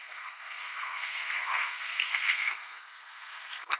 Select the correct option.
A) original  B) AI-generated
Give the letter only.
B